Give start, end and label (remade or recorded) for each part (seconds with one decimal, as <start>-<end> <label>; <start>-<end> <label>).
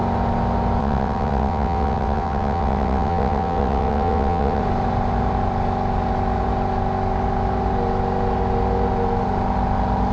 0.0-0.8 recorded; 0.8-4.6 remade; 4.6-10.1 recorded